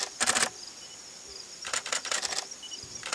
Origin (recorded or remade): recorded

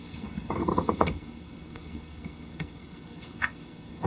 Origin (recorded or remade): remade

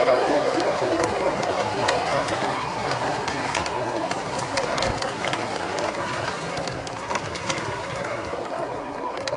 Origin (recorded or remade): remade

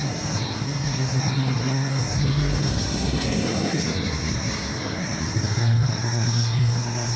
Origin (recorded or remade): remade